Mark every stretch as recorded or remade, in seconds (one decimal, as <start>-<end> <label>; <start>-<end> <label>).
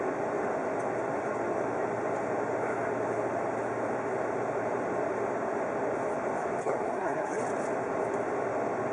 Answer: 0.0-6.6 recorded; 6.6-7.4 remade; 7.4-8.9 recorded